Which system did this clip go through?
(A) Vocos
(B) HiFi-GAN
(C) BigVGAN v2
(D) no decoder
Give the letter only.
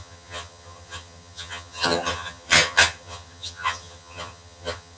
B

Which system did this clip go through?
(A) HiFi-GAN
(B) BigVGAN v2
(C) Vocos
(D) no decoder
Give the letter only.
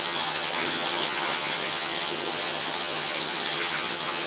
A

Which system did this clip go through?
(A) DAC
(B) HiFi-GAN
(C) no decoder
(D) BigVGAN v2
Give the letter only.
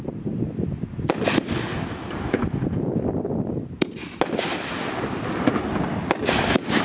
C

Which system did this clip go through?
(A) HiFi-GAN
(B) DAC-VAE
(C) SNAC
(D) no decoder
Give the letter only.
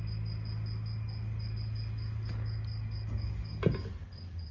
D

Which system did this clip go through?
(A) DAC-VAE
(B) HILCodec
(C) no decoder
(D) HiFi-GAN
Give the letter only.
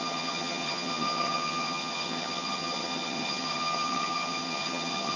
D